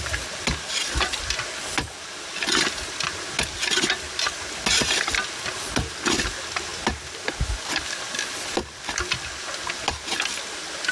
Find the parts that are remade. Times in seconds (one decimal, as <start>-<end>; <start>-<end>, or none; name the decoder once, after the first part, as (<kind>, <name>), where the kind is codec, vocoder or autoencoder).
none